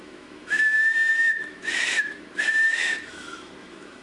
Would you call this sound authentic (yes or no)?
no